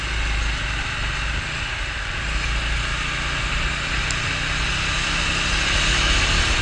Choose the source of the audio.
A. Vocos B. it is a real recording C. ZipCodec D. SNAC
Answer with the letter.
B